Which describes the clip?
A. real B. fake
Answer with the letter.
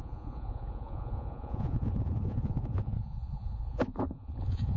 B